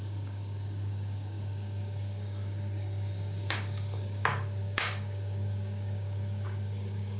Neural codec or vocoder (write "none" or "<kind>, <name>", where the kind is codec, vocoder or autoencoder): codec, DAC